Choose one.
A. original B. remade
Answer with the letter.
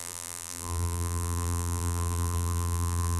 B